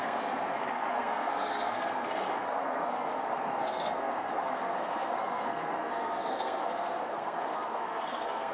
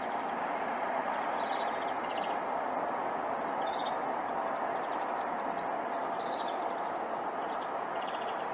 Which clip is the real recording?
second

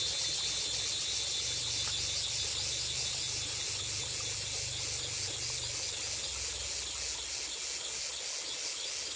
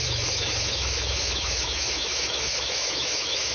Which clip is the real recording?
first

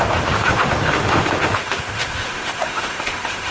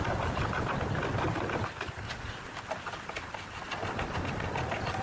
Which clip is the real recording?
second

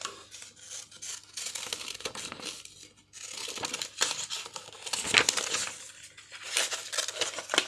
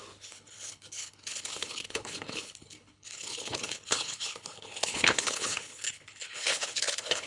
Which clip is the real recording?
first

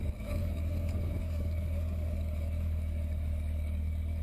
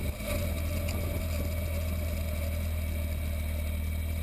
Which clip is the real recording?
second